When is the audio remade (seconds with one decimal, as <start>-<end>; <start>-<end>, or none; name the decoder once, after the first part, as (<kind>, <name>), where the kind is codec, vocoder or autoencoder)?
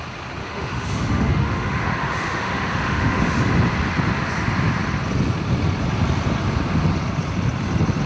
0.4-3.4 (autoencoder, DAC-VAE)